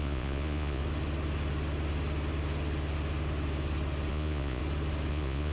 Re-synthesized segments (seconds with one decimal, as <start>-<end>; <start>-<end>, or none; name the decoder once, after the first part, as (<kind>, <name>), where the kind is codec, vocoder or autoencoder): 0.0-0.8 (vocoder, Vocos); 4.1-4.6; 5.1-5.5